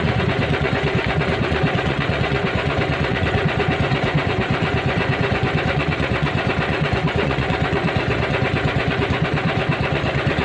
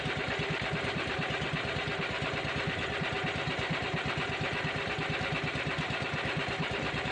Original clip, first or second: second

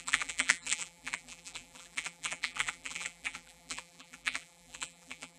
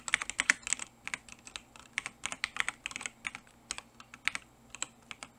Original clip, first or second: second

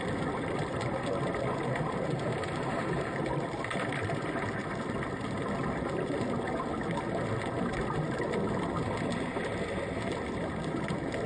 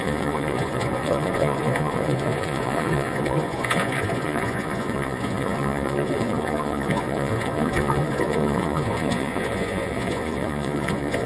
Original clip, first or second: first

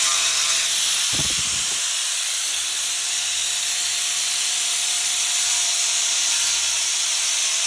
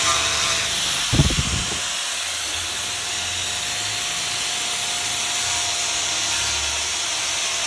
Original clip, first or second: second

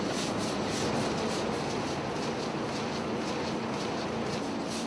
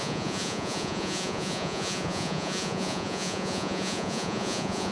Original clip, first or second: first